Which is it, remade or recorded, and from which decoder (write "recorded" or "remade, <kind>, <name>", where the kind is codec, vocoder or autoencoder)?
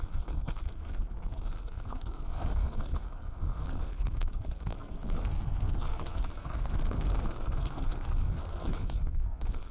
remade, codec, SNAC